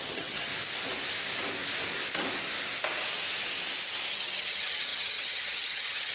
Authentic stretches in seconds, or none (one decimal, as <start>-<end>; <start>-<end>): 0.5-4.1